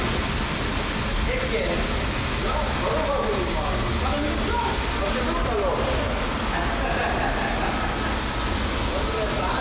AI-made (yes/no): no